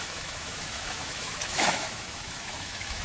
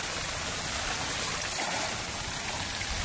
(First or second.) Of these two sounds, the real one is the second